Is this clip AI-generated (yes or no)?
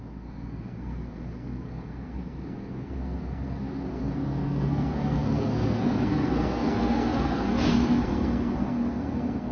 yes